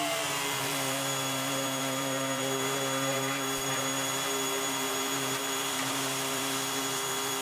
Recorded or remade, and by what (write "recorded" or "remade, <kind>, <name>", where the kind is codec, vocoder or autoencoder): remade, vocoder, BigVGAN v2